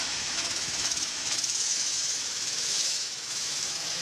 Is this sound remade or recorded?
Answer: remade